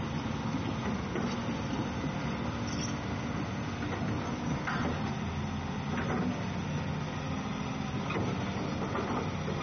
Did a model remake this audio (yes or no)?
no